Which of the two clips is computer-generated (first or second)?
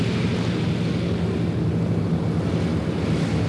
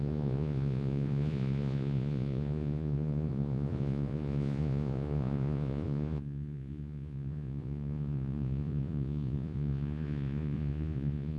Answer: second